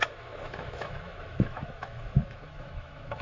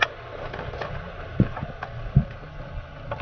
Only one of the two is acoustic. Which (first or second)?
second